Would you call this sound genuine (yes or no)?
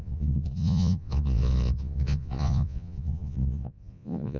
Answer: no